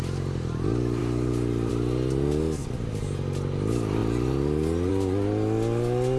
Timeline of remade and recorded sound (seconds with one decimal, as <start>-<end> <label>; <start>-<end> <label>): 0.0-6.2 recorded